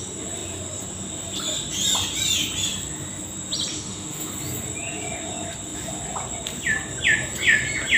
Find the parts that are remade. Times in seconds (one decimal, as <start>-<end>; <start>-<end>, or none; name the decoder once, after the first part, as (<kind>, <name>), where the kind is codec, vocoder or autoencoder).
3.7-4.3 (autoencoder, DAC-VAE)